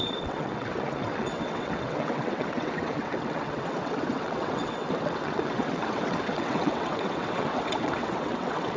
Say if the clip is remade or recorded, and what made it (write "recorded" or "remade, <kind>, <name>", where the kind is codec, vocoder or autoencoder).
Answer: remade, vocoder, WaveNeXt